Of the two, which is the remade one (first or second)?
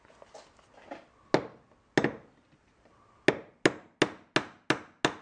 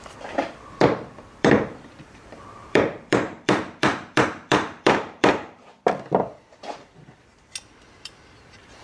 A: second